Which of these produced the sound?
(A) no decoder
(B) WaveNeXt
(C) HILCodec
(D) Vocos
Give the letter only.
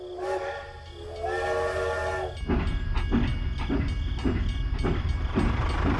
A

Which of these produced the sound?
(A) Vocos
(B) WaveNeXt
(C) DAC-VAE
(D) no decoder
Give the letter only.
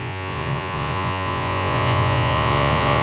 A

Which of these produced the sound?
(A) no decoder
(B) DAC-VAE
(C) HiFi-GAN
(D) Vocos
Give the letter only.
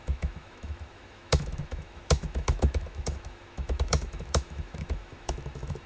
B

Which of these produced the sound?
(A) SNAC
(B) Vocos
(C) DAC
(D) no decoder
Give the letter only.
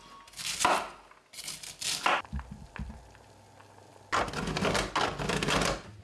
D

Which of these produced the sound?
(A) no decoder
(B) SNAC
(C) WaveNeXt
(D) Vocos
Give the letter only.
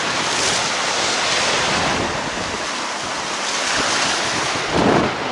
A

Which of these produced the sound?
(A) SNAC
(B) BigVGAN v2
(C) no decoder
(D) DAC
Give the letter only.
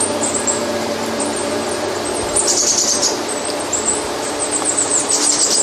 B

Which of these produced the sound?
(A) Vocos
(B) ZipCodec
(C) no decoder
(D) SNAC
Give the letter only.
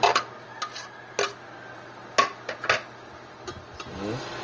C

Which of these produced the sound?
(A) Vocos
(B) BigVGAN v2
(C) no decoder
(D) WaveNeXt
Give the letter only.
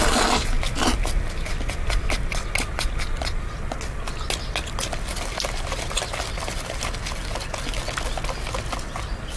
C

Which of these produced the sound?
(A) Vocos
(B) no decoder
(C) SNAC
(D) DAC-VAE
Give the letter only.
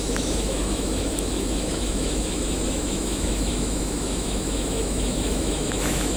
D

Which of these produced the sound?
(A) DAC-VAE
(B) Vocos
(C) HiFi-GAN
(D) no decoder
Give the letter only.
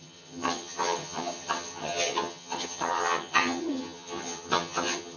C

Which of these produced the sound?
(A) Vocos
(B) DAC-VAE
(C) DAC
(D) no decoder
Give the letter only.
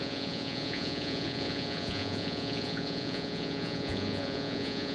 A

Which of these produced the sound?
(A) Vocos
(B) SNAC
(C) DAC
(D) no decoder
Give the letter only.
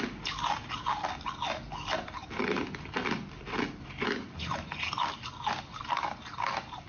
D